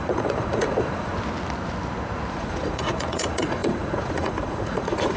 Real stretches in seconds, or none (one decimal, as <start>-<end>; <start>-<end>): 1.1-2.3